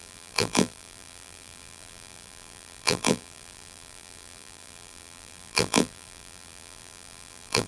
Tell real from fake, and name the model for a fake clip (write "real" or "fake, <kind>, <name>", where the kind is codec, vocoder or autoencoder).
fake, vocoder, BigVGAN v2